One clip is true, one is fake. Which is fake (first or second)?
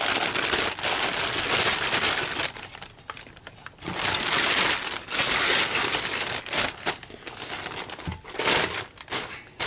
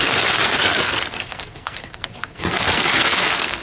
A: second